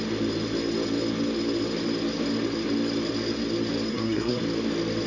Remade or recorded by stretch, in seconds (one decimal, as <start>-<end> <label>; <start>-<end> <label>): 0.0-3.9 recorded; 3.9-4.4 remade; 4.4-5.1 recorded